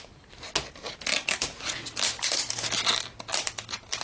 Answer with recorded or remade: recorded